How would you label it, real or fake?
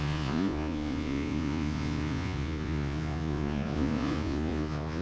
fake